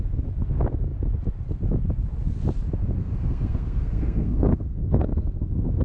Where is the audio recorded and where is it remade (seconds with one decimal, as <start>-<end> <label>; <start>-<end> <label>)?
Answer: 0.0-3.0 recorded; 3.0-5.8 remade